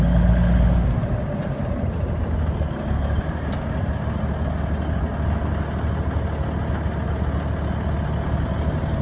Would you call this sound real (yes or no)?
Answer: yes